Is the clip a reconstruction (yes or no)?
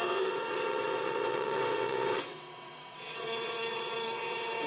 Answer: yes